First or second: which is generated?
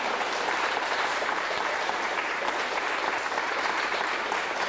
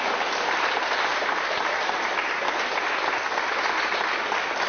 first